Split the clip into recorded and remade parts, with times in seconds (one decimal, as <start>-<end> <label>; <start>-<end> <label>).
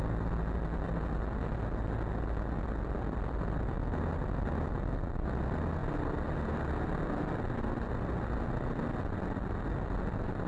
0.0-10.5 recorded